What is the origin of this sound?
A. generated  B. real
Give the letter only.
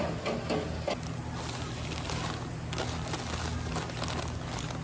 B